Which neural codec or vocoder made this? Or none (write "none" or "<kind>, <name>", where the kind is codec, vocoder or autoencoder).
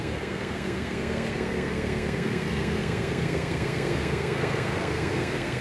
codec, SNAC